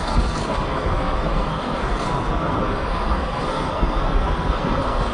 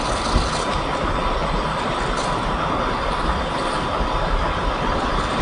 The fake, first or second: first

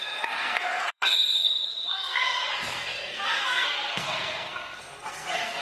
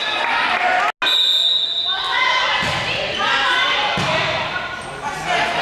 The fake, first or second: first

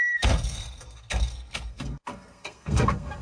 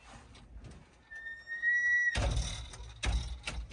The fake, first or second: first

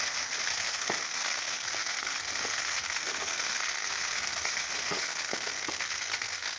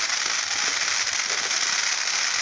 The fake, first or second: first